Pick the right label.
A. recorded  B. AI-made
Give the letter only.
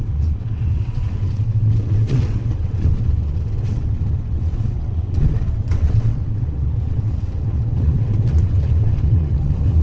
B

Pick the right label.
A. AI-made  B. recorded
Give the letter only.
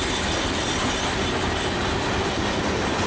B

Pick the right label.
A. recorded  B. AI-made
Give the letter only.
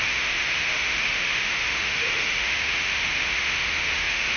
B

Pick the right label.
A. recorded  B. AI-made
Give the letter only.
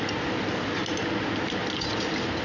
A